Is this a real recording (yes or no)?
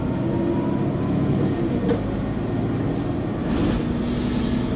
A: yes